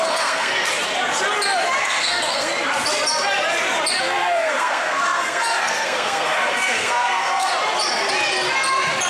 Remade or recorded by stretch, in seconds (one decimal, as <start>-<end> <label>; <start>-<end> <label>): 0.0-0.5 remade; 0.5-1.8 recorded; 1.8-2.5 remade; 2.5-4.0 recorded; 4.0-7.5 remade; 7.5-9.1 recorded